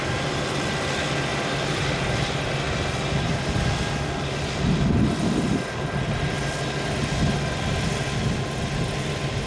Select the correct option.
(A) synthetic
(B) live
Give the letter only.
B